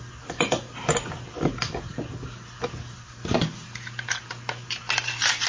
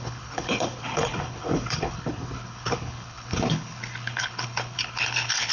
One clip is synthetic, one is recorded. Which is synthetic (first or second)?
second